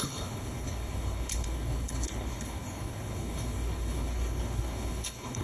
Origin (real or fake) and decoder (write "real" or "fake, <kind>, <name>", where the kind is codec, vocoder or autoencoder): fake, codec, HILCodec